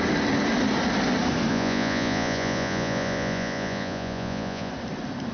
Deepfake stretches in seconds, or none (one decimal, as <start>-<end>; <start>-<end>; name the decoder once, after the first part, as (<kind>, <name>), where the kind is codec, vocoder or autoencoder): 1.5-4.7 (vocoder, Vocos)

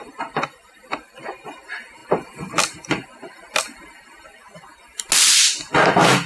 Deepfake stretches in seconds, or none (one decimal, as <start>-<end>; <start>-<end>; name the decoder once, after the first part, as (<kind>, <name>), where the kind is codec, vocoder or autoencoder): none

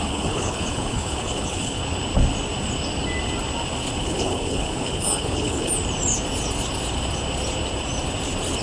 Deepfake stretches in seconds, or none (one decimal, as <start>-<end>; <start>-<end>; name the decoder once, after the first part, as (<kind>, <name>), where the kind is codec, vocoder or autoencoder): 0.0-1.8 (codec, HILCodec); 4.0-5.7

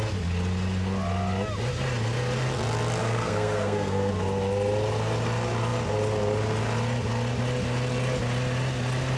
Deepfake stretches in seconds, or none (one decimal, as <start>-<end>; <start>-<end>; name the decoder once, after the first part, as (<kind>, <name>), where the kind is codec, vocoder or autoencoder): 3.0-4.1 (codec, SNAC)

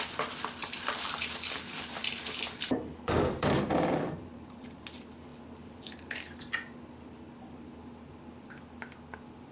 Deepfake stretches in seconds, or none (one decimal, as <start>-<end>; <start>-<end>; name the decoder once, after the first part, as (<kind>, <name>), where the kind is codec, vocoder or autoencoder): 0.6-4.8 (vocoder, BigVGAN v2)

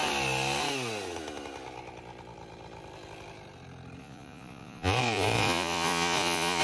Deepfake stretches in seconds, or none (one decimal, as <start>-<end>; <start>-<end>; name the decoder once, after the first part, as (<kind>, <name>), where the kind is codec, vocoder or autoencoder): 4.0-6.6 (vocoder, Vocos)